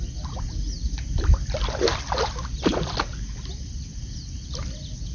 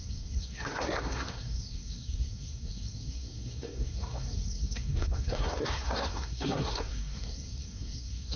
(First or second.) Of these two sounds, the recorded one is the first